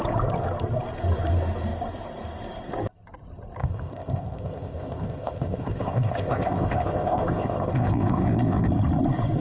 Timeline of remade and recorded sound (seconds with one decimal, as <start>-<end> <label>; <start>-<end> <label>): 0.0-3.6 recorded; 3.6-8.7 remade; 8.7-9.4 recorded